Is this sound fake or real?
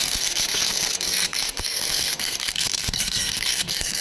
fake